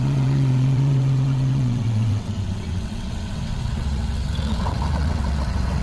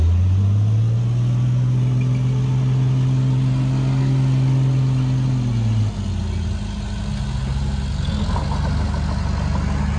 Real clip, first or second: second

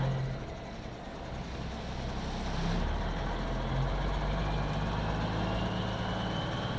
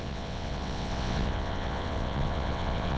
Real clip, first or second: first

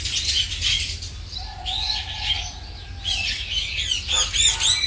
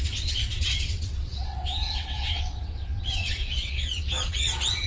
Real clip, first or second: first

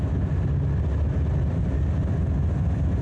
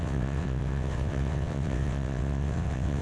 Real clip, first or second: first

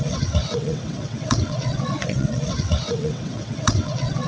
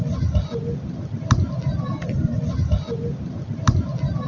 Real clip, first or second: second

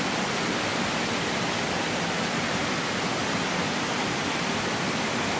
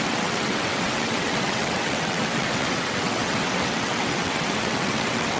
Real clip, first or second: first